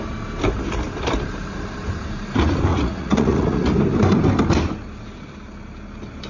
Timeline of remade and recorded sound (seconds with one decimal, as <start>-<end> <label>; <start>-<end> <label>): 0.0-2.7 recorded; 2.7-3.7 remade; 3.7-6.3 recorded